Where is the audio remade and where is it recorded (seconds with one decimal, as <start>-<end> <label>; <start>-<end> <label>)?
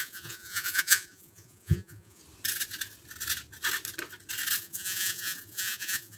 0.0-2.2 remade; 2.2-4.6 recorded; 4.6-6.2 remade